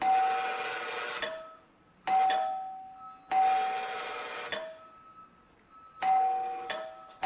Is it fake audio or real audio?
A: real